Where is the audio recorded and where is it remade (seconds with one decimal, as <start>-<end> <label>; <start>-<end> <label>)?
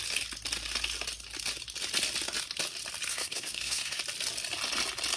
0.0-3.1 recorded; 3.1-4.0 remade; 4.0-5.2 recorded